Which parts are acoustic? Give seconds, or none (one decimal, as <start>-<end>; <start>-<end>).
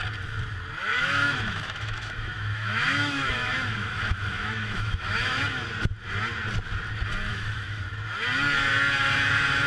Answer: 0.0-0.9; 5.4-7.3; 7.8-9.7